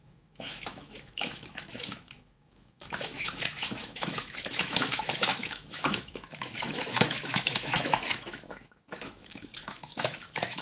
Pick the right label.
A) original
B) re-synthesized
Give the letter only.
B